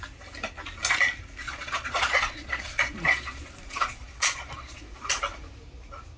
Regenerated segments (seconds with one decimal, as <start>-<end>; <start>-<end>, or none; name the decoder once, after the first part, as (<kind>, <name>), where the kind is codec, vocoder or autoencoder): 1.4-5.1 (vocoder, Vocos)